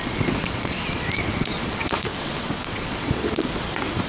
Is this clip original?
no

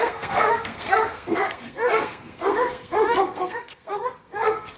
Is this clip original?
no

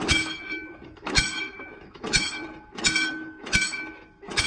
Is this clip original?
no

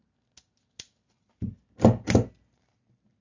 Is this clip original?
yes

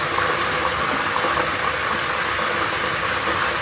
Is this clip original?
yes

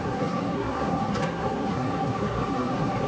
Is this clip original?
no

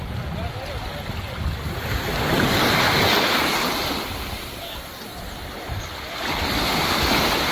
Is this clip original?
yes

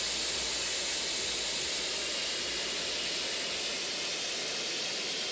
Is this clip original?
yes